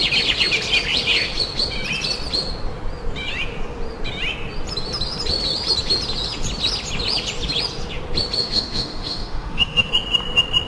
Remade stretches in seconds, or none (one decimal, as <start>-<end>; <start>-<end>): 8.4-9.9